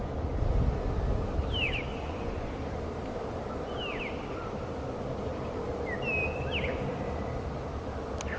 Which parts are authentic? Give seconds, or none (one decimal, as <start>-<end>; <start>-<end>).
0.0-1.9; 2.5-8.4